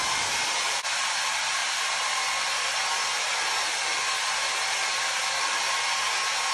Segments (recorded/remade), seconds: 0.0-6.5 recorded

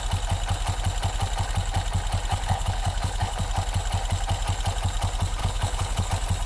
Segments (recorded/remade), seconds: 0.0-2.3 recorded; 2.3-3.4 remade; 3.4-5.4 recorded; 5.4-6.1 remade; 6.1-6.5 recorded

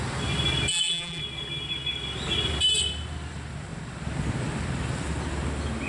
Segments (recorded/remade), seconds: 0.0-0.7 recorded; 0.7-1.2 remade; 1.2-5.9 recorded

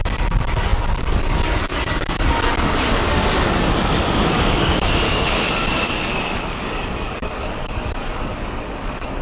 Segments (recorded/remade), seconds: 0.0-9.2 remade

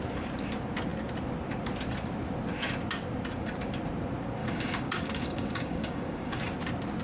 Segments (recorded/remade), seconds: 0.0-4.4 recorded; 4.4-6.4 remade; 6.4-7.0 recorded

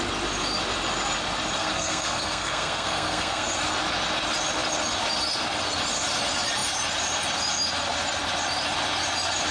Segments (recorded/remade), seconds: 0.0-1.6 recorded; 1.6-3.6 remade; 3.6-9.5 recorded

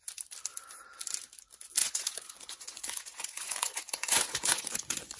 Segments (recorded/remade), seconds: 0.0-1.8 recorded; 1.8-5.2 remade